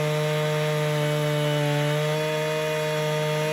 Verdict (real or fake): real